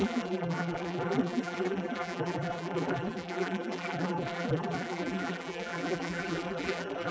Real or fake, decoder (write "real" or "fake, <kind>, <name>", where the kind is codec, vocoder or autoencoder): fake, vocoder, BigVGAN v2